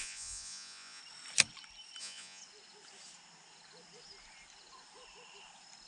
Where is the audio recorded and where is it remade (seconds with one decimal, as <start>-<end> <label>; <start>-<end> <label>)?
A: 0.0-1.0 remade; 1.0-2.0 recorded; 2.0-2.4 remade; 2.4-5.9 recorded